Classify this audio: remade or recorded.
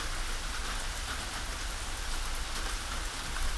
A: recorded